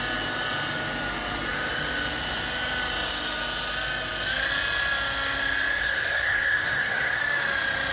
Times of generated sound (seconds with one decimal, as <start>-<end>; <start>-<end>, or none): 5.8-7.2